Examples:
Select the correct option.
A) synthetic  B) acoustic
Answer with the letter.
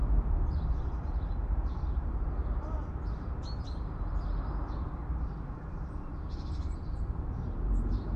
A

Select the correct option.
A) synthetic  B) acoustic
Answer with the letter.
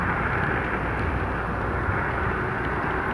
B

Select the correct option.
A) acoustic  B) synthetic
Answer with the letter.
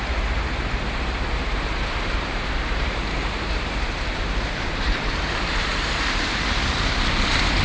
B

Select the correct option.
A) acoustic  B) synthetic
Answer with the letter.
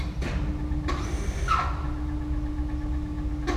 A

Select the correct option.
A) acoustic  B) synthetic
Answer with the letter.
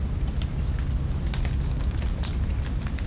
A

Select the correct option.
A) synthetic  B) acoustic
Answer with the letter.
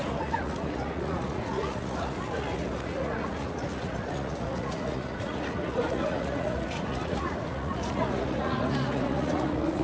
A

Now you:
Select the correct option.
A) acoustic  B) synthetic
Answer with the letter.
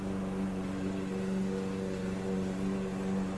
A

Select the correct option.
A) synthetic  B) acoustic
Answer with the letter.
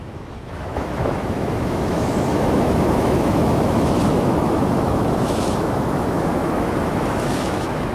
A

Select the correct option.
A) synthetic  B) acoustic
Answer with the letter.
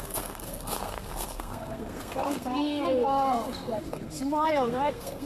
A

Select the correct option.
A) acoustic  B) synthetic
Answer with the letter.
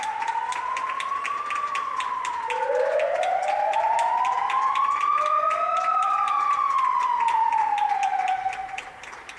A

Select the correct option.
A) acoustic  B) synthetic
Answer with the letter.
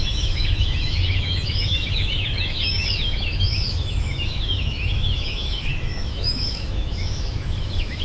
B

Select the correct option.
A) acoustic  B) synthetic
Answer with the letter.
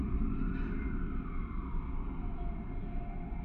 A